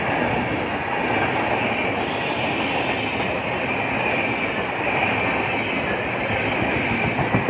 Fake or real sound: real